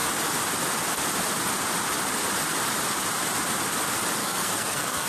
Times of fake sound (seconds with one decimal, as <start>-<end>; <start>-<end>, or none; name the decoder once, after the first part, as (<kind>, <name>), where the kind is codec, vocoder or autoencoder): 4.2-5.1 (codec, SNAC)